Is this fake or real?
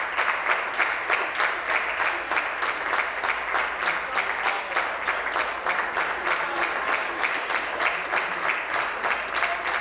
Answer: real